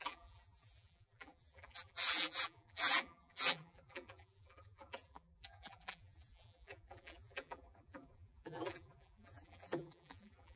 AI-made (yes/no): yes